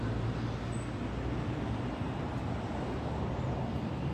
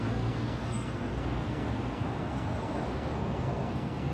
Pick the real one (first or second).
first